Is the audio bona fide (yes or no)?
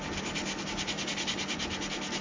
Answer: yes